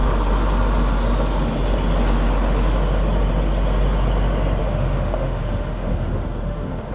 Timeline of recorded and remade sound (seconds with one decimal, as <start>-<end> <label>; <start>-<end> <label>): 0.0-4.6 recorded; 4.6-6.9 remade